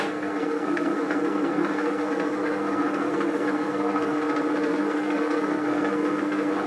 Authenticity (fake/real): fake